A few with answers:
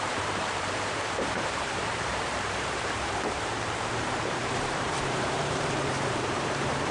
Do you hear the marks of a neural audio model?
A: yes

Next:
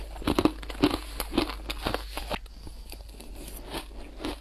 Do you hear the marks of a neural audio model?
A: no